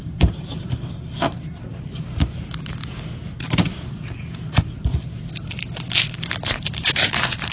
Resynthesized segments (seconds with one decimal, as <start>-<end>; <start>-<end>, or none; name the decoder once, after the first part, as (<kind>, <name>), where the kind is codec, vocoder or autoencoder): 0.0-2.8 (vocoder, BigVGAN v2); 4.6-7.5